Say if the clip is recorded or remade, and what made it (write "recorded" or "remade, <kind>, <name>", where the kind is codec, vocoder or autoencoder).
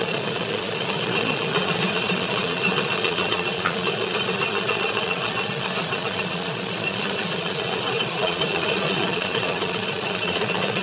remade, vocoder, Vocos